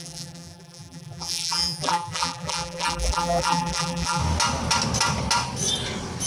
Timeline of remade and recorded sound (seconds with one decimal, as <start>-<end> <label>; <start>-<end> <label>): 0.0-4.2 remade; 4.2-6.3 recorded